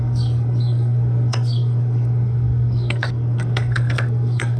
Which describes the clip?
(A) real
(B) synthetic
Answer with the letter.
B